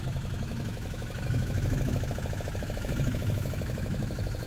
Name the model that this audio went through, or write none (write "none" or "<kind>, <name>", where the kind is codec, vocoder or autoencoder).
autoencoder, DAC-VAE